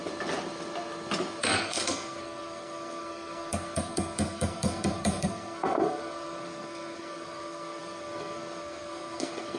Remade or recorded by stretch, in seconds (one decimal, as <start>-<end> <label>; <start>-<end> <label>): 0.0-1.4 recorded; 1.4-9.6 remade